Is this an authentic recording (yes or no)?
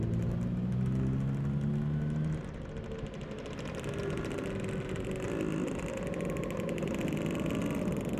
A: yes